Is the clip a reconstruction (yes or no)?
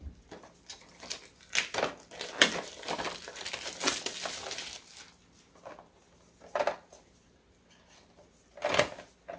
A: no